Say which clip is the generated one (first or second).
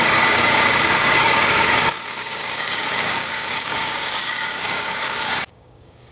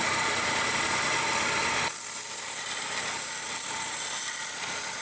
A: first